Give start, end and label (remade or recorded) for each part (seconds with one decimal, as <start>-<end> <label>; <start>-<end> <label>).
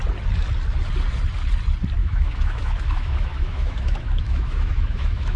0.0-2.0 recorded; 2.0-5.4 remade